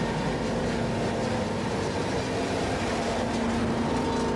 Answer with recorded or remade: recorded